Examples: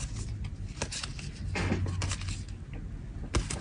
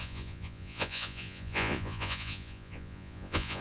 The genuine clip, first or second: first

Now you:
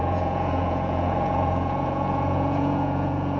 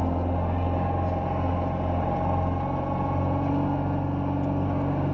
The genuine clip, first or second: second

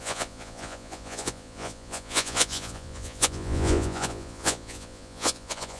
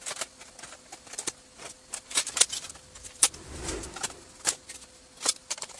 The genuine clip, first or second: second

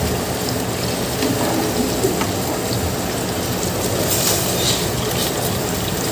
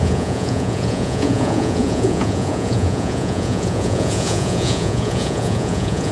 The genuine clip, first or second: first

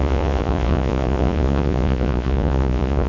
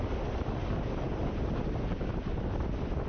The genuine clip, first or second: second